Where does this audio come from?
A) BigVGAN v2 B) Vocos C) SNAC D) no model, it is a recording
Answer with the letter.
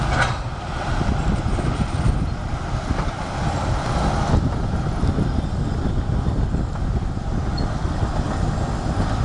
D